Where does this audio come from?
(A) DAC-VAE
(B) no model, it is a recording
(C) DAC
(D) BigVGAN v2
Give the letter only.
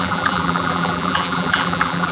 D